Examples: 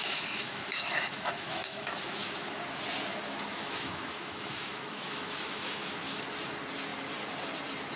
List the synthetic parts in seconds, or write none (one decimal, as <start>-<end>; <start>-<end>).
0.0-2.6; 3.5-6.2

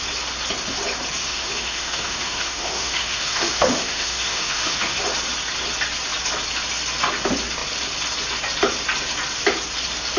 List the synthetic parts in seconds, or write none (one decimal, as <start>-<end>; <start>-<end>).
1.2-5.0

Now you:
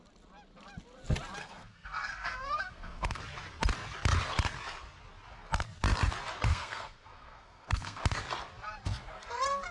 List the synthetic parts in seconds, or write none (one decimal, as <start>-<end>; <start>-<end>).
1.4-3.2; 6.5-8.0

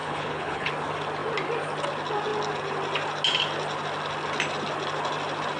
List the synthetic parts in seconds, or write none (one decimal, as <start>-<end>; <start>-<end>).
0.0-0.7

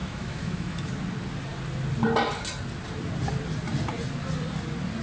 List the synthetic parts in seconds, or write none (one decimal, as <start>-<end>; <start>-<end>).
0.0-0.9

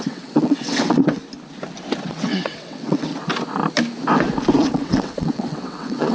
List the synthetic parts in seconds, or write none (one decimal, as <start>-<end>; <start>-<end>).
0.0-1.2; 2.0-3.1; 4.6-6.1

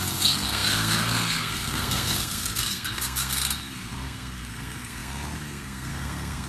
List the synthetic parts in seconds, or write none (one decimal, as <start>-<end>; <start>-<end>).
0.0-6.5